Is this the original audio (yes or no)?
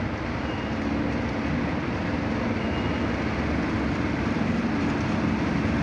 yes